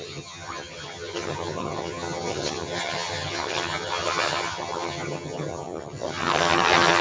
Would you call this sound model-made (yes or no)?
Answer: yes